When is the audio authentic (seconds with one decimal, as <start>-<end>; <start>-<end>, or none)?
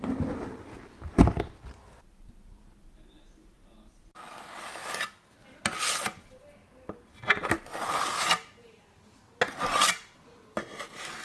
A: 0.0-11.2